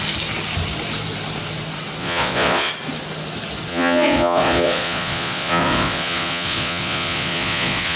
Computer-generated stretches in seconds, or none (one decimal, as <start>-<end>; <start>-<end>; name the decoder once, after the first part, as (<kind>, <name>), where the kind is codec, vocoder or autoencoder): 2.0-2.7 (vocoder, Vocos); 3.7-8.0